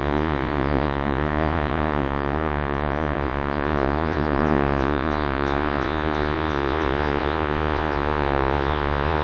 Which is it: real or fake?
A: fake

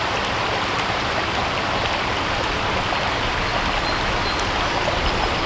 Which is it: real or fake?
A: real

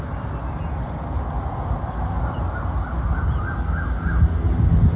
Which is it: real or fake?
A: real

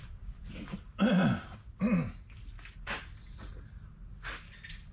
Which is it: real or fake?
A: real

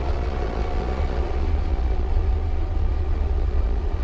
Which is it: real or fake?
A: fake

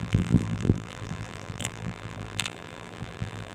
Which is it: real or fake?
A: fake